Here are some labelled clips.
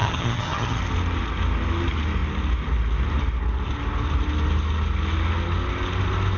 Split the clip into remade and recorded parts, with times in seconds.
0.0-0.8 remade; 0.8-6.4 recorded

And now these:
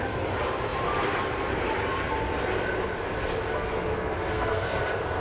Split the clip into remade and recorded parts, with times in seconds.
0.0-3.9 recorded; 3.9-4.8 remade; 4.8-5.2 recorded

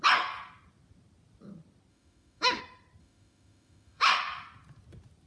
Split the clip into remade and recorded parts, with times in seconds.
0.0-1.9 recorded; 1.9-2.6 remade; 2.6-3.0 recorded; 3.0-4.1 remade; 4.1-5.3 recorded

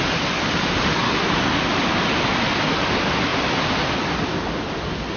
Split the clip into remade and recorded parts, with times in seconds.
0.0-5.2 recorded